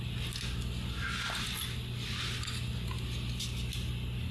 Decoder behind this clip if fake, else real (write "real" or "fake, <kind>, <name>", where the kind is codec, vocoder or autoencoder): real